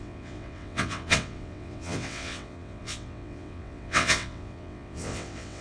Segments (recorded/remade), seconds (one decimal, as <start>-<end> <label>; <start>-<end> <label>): 0.0-5.6 remade